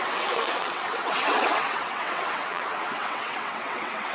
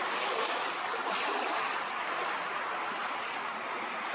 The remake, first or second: first